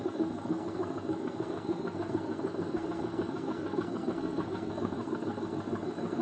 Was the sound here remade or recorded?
remade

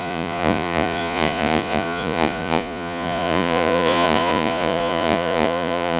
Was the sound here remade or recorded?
remade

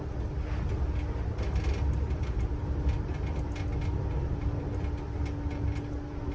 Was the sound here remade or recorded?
recorded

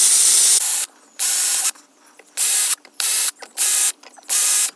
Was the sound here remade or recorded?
recorded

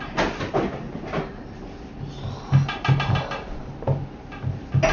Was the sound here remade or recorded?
recorded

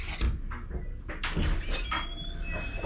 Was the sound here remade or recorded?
recorded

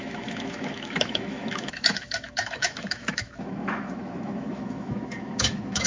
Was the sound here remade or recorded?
remade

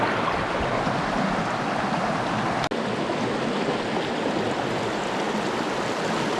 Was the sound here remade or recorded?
recorded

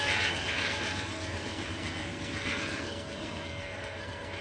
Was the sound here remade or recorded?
remade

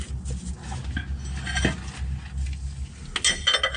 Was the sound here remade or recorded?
recorded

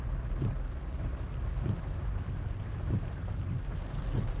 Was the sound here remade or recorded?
recorded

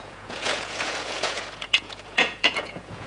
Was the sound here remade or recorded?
remade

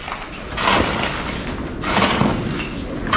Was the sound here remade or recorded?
recorded